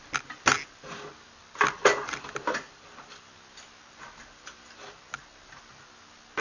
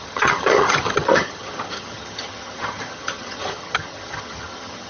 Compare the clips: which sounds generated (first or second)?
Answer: second